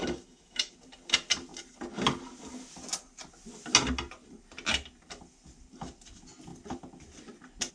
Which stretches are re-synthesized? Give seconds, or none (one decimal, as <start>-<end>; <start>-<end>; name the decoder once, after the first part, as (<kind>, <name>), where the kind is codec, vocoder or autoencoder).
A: 0.0-0.7 (autoencoder, DAC-VAE)